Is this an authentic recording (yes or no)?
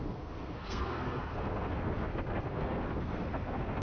no